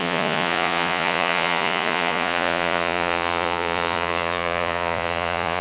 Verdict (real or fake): fake